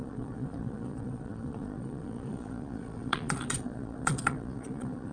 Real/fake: fake